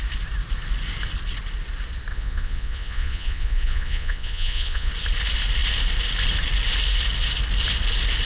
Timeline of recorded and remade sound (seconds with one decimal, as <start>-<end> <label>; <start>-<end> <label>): 0.0-2.1 recorded; 2.1-4.9 remade; 4.9-8.2 recorded